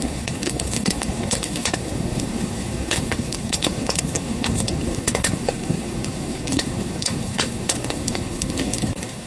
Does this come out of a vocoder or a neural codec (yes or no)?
yes